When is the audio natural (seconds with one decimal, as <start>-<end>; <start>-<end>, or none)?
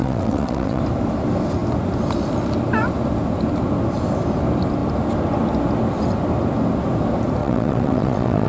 0.8-7.4